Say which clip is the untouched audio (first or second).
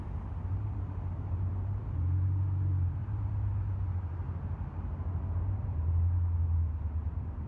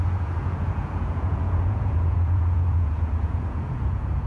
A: first